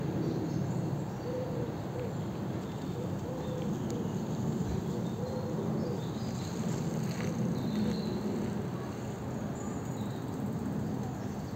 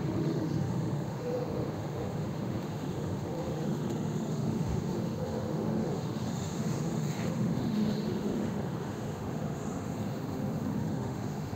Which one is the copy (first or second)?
second